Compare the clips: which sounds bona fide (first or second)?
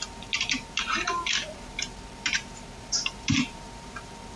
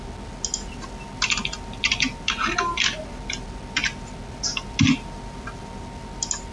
second